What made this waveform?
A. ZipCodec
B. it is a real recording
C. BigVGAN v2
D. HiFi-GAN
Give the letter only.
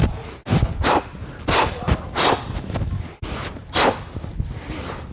B